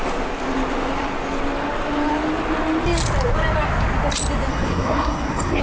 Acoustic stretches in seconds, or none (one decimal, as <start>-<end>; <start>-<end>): 0.0-4.5